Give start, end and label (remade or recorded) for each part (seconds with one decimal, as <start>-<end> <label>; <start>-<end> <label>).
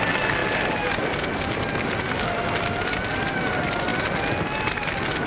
0.0-5.3 recorded